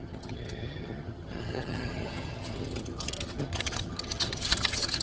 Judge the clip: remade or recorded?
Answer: remade